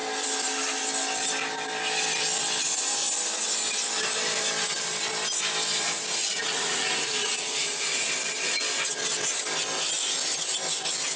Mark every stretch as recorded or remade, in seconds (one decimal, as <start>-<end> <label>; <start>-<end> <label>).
0.0-6.2 recorded; 6.2-8.1 remade; 8.1-11.2 recorded